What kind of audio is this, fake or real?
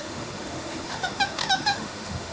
fake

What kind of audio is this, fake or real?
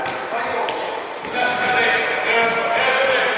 real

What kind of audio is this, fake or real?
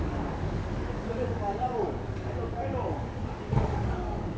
fake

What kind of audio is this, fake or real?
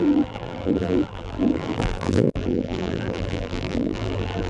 fake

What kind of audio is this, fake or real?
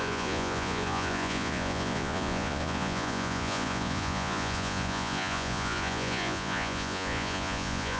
fake